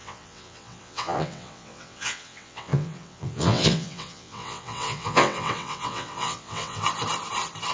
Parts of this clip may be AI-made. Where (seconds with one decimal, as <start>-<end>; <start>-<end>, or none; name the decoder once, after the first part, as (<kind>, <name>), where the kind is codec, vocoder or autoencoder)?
0.0-6.8 (vocoder, WaveNeXt)

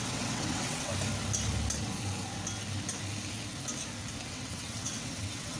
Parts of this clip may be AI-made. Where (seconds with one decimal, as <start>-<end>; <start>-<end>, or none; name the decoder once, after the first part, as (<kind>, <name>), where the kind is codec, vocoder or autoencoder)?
0.0-0.9 (vocoder, WaveNeXt); 4.3-5.6

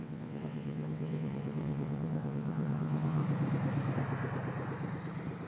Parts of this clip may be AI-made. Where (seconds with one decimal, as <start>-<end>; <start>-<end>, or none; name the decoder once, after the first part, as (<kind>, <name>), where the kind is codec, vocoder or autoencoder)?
0.0-3.2 (vocoder, WaveNeXt)

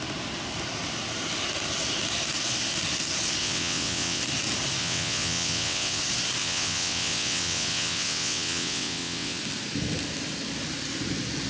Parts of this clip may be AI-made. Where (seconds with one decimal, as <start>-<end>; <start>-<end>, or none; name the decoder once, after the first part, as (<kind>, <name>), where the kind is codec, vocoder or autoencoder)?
3.4-4.2 (vocoder, WaveNeXt); 4.8-6.0; 6.4-9.4

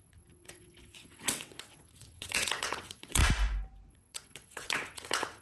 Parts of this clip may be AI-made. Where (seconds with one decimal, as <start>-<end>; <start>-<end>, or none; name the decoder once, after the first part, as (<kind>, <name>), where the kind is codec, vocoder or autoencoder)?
0.0-3.2 (vocoder, WaveNeXt); 3.9-5.4

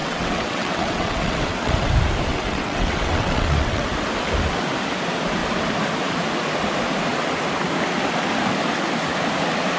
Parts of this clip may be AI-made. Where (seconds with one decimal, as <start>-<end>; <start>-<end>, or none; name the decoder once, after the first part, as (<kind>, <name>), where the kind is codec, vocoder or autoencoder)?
0.0-1.9 (vocoder, WaveNeXt); 2.3-3.9